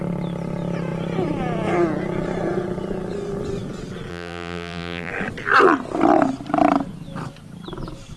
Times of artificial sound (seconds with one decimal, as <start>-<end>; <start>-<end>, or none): 4.1-5.1